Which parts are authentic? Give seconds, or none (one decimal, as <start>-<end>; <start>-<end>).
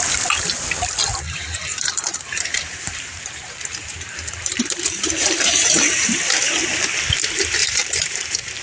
0.0-2.1; 6.2-7.6